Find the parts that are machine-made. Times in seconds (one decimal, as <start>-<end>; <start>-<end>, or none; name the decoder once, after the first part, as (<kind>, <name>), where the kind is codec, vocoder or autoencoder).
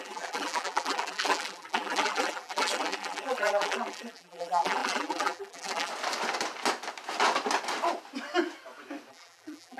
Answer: 0.0-5.9 (vocoder, BigVGAN v2); 9.1-9.8